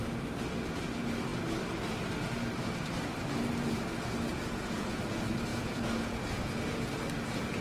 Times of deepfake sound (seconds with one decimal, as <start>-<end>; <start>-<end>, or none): 4.3-5.0; 5.5-6.9